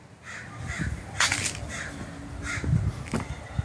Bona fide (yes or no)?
yes